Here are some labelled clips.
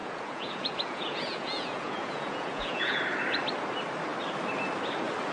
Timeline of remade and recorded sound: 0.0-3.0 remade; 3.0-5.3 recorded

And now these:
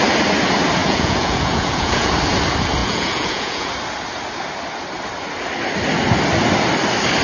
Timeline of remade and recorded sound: 0.0-0.8 recorded; 0.8-2.1 remade; 2.1-2.8 recorded; 2.8-3.7 remade; 3.7-7.2 recorded